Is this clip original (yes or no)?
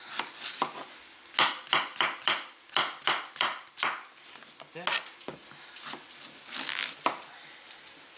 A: yes